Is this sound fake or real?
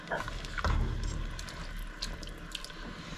real